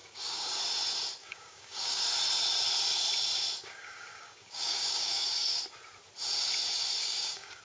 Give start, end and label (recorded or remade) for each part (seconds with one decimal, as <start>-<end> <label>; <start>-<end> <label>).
0.0-0.6 remade; 0.6-1.2 recorded; 1.2-2.0 remade; 2.0-3.6 recorded; 3.6-5.6 remade; 5.6-7.0 recorded; 7.0-7.6 remade